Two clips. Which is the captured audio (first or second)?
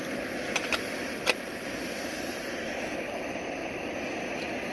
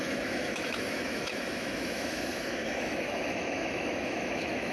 first